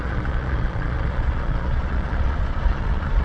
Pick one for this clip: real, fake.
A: fake